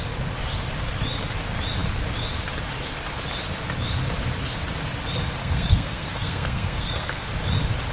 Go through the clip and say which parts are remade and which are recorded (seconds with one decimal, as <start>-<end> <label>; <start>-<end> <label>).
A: 0.0-5.4 recorded; 5.4-7.3 remade; 7.3-7.9 recorded

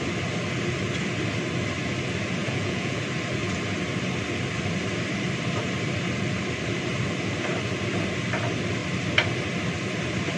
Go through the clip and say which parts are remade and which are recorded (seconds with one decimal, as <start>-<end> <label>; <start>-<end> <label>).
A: 0.0-2.4 recorded; 2.4-3.0 remade; 3.0-10.4 recorded

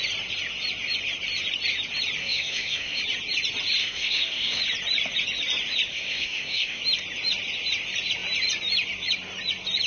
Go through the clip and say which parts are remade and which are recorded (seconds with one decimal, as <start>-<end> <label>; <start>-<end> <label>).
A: 0.0-2.2 recorded; 2.2-3.0 remade; 3.0-3.8 recorded; 3.8-4.6 remade; 4.6-5.9 recorded; 5.9-6.8 remade; 6.8-9.9 recorded